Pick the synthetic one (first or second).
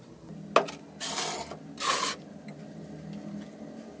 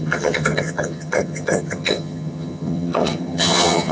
second